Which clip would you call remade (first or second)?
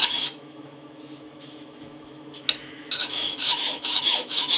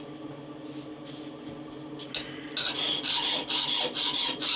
first